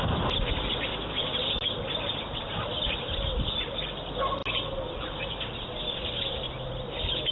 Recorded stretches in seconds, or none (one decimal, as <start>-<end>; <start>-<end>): 0.0-7.3